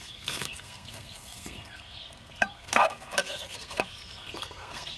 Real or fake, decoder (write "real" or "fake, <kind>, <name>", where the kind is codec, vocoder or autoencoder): fake, codec, SNAC